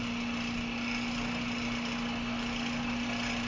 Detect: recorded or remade recorded